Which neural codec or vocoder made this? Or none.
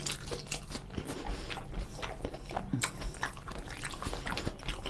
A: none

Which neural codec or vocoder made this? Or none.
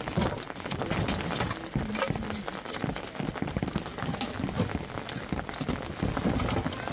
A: none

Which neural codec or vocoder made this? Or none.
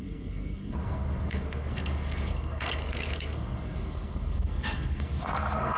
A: codec, SNAC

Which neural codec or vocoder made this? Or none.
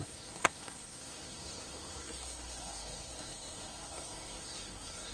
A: codec, SNAC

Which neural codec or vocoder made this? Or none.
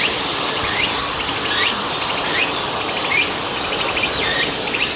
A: none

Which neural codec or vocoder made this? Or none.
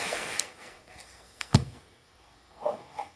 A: codec, SNAC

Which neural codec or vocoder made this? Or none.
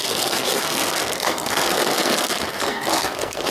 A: codec, SNAC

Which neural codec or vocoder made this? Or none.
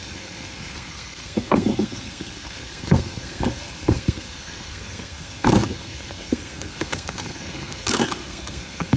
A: codec, SNAC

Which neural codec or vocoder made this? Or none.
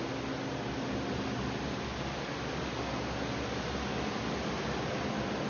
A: none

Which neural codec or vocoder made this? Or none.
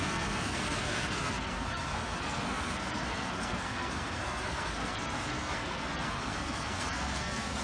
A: codec, SNAC